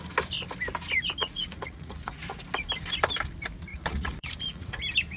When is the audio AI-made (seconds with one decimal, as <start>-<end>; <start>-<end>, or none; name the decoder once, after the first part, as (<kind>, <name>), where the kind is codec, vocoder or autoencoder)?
1.2-2.4 (vocoder, Vocos); 3.7-4.8